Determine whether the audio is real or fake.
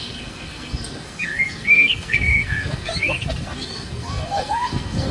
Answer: fake